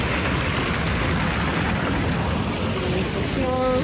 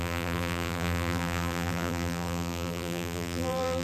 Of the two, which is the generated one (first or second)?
second